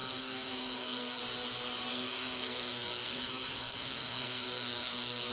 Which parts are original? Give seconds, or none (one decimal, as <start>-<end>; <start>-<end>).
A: 1.2-1.9